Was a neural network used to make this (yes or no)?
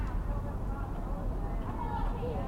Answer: no